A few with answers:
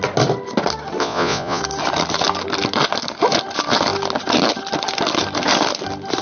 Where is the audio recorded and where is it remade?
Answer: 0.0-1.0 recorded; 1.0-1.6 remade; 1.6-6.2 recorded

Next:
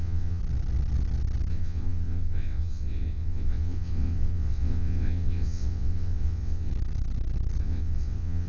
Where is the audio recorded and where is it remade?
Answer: 0.0-0.4 remade; 0.4-1.5 recorded; 1.5-6.7 remade; 6.7-7.6 recorded; 7.6-8.5 remade

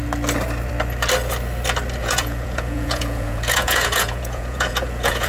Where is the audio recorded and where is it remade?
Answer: 0.0-2.0 recorded; 2.0-5.3 remade